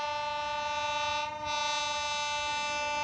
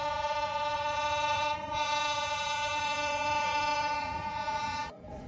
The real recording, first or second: first